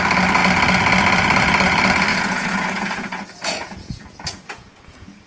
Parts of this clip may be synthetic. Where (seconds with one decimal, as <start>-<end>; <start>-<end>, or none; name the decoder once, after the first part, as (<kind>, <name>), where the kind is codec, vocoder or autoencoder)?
2.1-5.3 (vocoder, Vocos)